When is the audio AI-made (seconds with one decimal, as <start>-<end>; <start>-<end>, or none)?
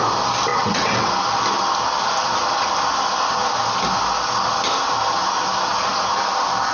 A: 0.5-1.1